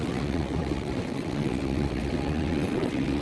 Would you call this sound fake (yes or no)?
yes